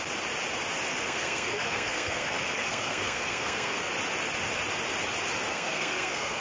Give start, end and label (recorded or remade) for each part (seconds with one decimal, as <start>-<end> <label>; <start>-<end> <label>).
0.0-0.9 recorded; 0.9-3.9 remade; 3.9-5.5 recorded; 5.5-6.4 remade